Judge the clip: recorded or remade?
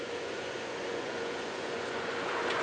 remade